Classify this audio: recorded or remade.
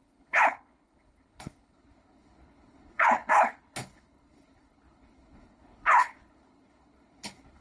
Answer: remade